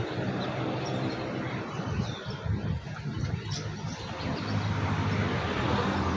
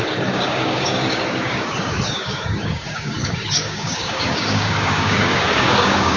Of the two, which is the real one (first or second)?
first